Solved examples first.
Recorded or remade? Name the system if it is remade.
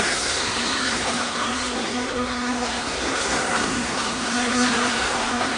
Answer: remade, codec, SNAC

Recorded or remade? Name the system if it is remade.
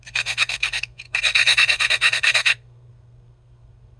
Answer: remade, codec, SNAC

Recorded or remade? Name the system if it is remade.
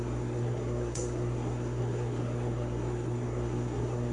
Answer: remade, codec, SNAC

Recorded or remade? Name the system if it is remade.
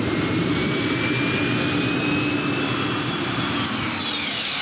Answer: recorded